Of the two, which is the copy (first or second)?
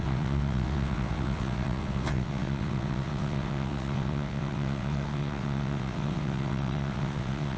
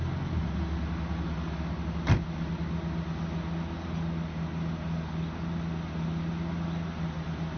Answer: first